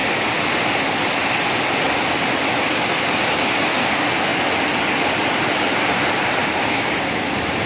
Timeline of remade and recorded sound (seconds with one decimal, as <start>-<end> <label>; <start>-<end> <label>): 0.0-6.4 recorded; 6.4-7.3 remade; 7.3-7.7 recorded